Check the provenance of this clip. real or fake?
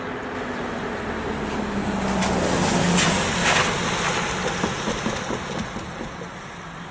real